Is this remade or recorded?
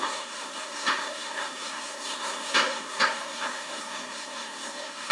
remade